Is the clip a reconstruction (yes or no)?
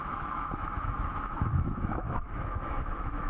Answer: yes